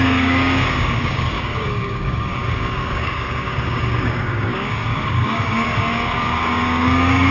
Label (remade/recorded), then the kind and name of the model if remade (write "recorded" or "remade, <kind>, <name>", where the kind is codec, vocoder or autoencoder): remade, codec, DAC